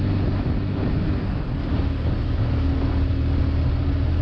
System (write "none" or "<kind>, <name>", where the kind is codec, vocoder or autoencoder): none